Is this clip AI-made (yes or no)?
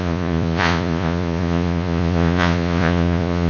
yes